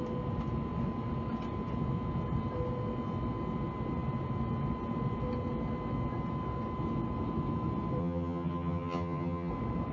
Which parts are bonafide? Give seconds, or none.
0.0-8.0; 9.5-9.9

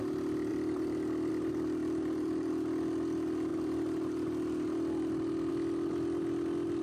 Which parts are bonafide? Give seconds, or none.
0.0-0.5; 1.3-1.8; 2.5-3.5; 5.5-6.8

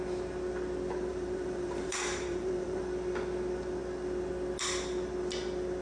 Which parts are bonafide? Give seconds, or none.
0.0-1.1; 2.8-5.8